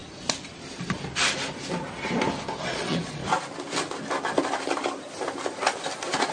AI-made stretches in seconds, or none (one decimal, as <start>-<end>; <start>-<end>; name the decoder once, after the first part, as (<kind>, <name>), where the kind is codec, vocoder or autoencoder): 2.7-3.2 (vocoder, Vocos)